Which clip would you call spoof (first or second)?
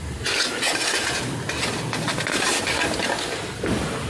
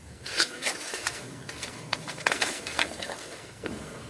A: second